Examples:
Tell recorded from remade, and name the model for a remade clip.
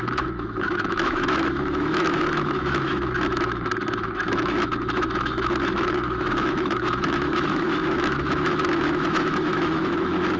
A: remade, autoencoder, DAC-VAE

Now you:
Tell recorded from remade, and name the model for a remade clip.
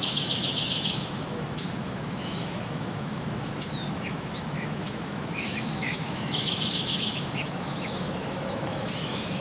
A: remade, autoencoder, DAC-VAE